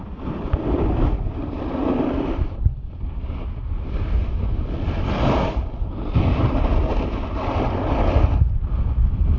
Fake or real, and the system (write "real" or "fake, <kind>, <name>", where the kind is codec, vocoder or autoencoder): real